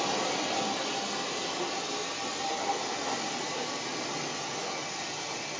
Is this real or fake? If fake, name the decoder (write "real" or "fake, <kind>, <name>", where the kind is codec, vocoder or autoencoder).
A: real